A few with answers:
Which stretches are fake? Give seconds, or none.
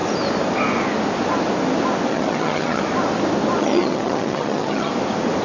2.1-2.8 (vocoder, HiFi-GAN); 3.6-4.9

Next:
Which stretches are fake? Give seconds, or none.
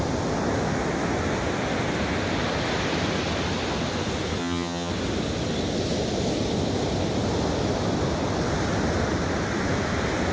4.4-4.9 (vocoder, HiFi-GAN)